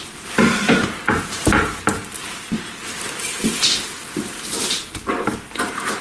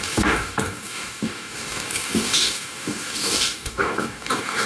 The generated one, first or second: second